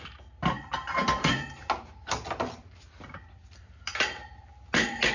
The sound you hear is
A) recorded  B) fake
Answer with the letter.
A